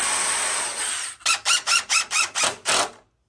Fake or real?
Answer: real